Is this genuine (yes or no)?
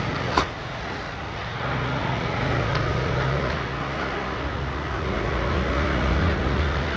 no